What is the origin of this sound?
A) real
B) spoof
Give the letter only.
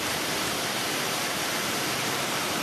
B